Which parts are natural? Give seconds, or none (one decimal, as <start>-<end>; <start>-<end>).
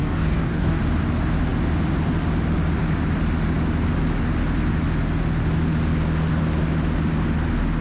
0.8-7.8